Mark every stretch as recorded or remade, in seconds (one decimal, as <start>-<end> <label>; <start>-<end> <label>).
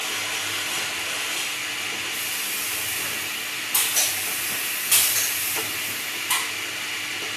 0.0-7.4 recorded